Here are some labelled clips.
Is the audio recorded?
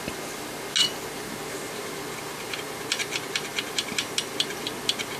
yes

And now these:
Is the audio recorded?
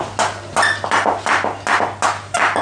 yes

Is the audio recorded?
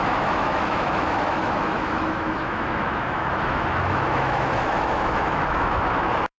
no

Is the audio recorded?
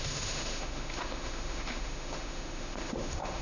no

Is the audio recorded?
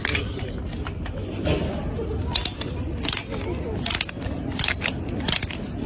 yes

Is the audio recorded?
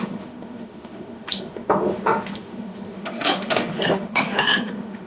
no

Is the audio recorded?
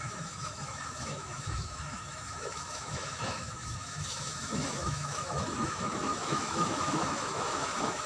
no